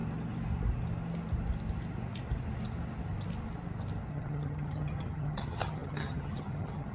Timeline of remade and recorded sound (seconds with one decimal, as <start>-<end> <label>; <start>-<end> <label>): 0.0-4.1 recorded; 4.1-6.9 remade